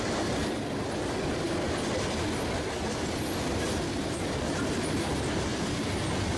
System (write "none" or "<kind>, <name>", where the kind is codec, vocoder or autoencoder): none